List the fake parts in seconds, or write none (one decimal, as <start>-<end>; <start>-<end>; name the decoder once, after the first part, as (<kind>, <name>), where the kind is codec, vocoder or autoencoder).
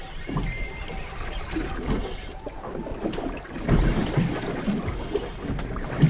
2.9-4.9 (vocoder, BigVGAN v2)